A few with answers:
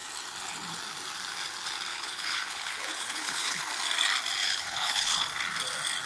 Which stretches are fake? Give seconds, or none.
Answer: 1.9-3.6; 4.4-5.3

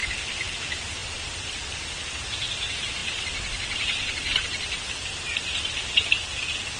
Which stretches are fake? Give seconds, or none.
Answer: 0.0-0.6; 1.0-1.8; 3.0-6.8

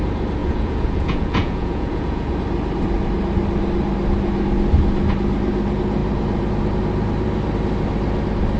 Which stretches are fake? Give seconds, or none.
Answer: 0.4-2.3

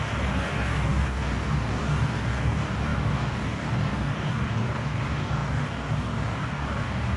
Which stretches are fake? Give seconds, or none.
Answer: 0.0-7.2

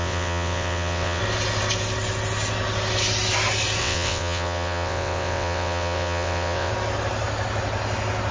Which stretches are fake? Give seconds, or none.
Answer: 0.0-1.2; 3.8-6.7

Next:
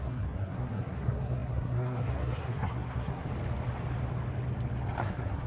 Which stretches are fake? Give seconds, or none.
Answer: 0.0-3.3; 5.0-5.5

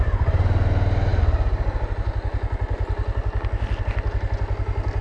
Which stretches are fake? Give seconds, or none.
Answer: none